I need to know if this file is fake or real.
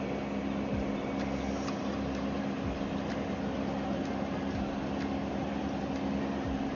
real